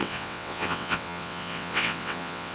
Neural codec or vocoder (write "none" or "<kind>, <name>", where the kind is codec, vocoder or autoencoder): vocoder, WaveNeXt